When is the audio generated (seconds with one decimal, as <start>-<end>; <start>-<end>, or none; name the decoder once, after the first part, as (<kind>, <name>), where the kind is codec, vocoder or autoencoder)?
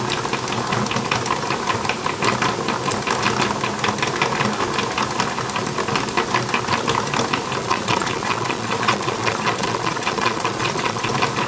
7.6-11.1 (vocoder, Vocos)